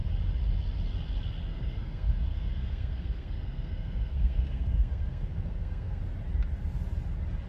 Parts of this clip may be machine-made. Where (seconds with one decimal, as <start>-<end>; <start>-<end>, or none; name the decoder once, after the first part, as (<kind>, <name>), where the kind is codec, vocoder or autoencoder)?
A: 1.5-6.0 (codec, SNAC)